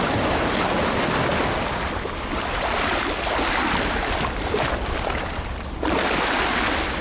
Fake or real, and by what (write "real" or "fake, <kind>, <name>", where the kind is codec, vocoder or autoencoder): real